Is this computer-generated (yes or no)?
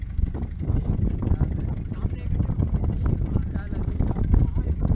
no